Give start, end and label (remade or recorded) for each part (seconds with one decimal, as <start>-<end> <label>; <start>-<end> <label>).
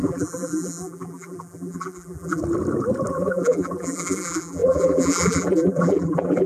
0.0-2.4 remade; 2.4-3.1 recorded; 3.1-6.5 remade